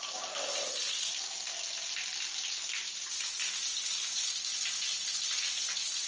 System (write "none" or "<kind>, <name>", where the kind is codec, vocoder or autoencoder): none